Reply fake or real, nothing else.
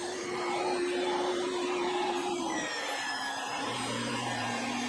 fake